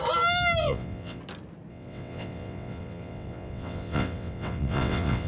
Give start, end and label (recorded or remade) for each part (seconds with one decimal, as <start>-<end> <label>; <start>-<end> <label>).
0.0-0.6 recorded; 0.6-1.2 remade; 1.2-1.7 recorded; 1.7-5.3 remade